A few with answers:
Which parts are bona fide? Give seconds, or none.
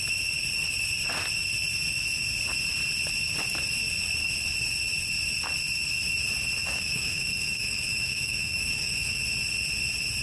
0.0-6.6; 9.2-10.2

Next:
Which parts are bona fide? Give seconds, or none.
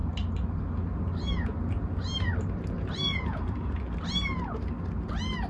0.0-3.0; 3.8-5.5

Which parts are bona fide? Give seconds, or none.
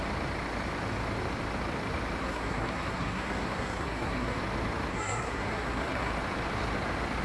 0.0-2.2; 4.4-4.9; 6.1-7.2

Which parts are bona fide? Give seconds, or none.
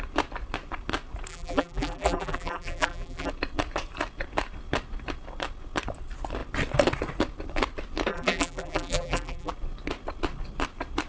0.0-1.3; 3.3-8.1; 9.5-11.1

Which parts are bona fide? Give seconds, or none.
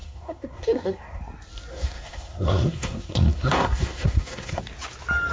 1.2-1.7; 4.6-5.3